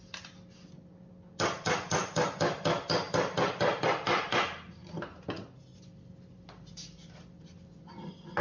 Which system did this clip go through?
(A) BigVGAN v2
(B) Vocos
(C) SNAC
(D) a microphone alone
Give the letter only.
D